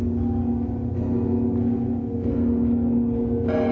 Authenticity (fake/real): real